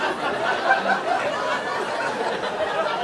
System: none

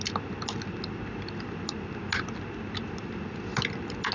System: none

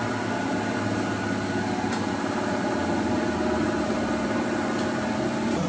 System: none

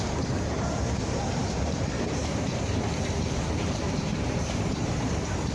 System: vocoder, BigVGAN v2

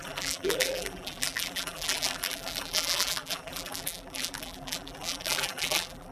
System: vocoder, BigVGAN v2